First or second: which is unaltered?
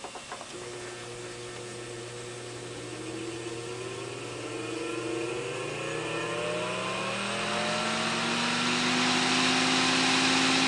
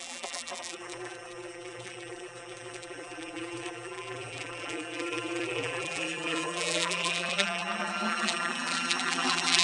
first